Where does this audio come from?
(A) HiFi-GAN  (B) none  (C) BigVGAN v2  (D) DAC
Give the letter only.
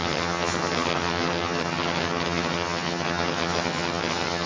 A